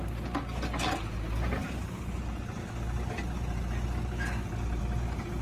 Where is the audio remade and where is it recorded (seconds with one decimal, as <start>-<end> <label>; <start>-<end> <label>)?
0.0-5.4 recorded